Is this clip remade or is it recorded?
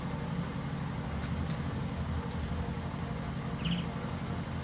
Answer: recorded